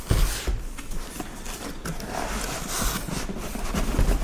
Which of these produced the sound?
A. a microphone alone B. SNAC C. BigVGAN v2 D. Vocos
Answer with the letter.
A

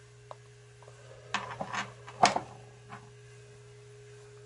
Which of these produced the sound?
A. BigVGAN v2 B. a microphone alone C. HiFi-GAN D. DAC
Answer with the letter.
B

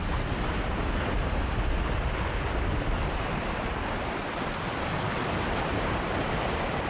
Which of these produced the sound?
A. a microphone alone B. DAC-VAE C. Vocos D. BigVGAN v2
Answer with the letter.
A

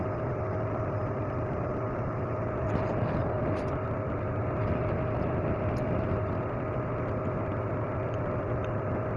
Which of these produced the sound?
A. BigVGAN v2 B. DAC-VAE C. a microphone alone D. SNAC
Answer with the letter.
A